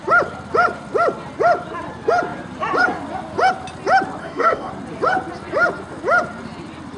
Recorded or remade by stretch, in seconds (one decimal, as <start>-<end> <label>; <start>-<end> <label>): 0.0-4.2 recorded; 4.2-4.7 remade; 4.7-7.0 recorded